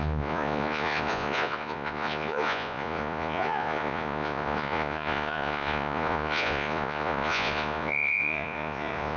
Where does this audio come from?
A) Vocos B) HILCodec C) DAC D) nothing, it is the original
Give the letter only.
A